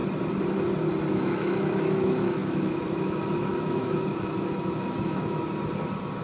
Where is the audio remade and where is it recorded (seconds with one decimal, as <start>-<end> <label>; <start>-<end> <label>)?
0.0-1.1 recorded; 1.1-5.4 remade; 5.4-6.2 recorded